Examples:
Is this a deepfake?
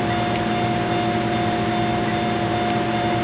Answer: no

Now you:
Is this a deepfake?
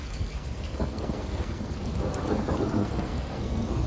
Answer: yes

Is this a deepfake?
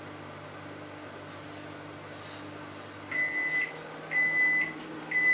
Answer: no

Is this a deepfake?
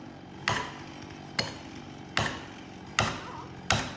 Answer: no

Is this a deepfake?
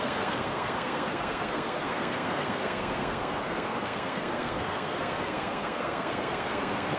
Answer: yes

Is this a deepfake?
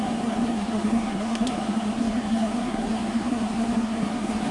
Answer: yes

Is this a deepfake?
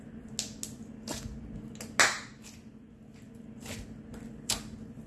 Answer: no